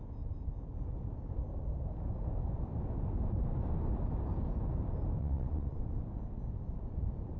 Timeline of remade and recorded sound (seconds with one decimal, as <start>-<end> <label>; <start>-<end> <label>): 0.0-5.2 recorded; 5.2-5.8 remade; 5.8-7.4 recorded